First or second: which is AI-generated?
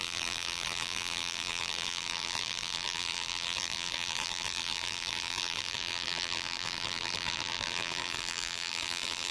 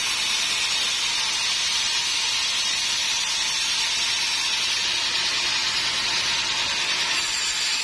first